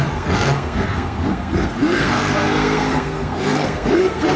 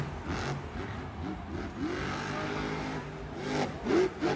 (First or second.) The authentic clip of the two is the second